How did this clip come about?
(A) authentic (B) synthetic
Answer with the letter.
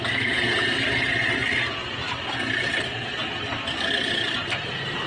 A